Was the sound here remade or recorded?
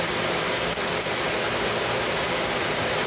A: recorded